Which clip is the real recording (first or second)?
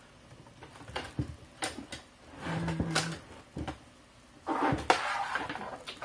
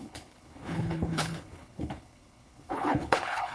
first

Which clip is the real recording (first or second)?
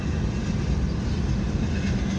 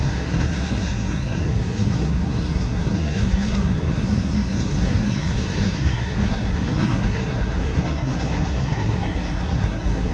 first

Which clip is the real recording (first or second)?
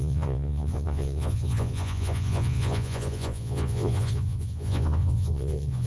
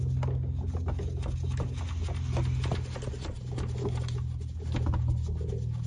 second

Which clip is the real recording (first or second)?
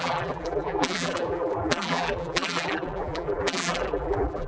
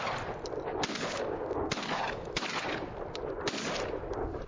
second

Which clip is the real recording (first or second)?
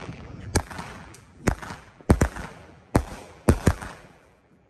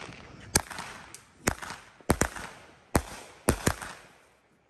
second